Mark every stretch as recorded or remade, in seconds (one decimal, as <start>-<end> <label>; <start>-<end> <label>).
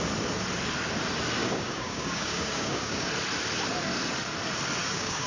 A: 0.0-1.4 recorded; 1.4-3.1 remade; 3.1-4.8 recorded; 4.8-5.3 remade